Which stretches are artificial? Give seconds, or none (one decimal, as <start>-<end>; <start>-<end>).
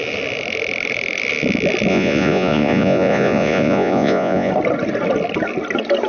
1.9-4.5